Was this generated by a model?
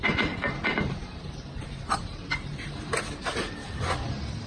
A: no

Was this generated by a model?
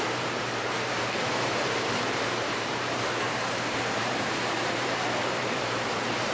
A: yes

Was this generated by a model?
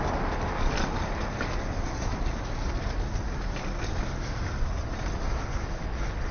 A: no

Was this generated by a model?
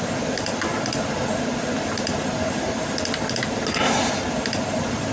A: no